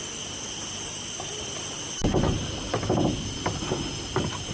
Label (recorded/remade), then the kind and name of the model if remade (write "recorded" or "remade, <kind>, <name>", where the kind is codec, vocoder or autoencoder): recorded